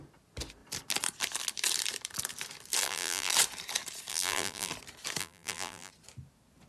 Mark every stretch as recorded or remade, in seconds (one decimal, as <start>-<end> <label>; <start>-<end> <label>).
0.0-2.8 recorded; 2.8-3.3 remade; 3.3-4.1 recorded; 4.1-4.7 remade; 4.7-5.2 recorded; 5.2-5.9 remade; 5.9-6.7 recorded